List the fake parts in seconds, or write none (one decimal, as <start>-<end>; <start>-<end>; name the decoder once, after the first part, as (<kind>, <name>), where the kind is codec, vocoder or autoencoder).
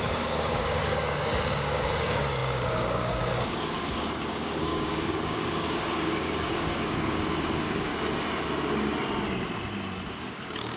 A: 0.0-7.9 (codec, DAC); 10.1-10.8